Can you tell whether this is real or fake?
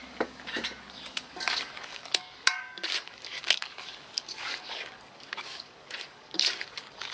fake